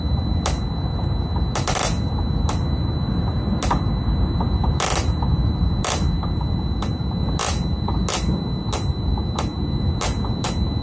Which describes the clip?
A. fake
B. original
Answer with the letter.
B